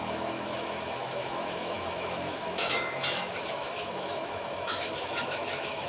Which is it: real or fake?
fake